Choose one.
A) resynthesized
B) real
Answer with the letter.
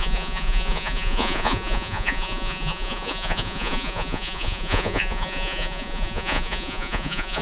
A